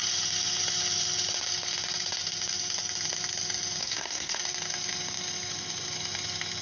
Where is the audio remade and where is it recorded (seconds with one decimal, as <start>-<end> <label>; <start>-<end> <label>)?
0.0-3.8 recorded; 3.8-4.4 remade; 4.4-6.6 recorded